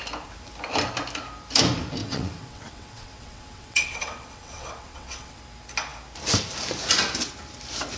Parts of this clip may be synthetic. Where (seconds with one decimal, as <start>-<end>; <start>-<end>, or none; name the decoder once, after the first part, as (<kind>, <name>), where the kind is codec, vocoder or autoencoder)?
2.0-5.4 (vocoder, WaveNeXt)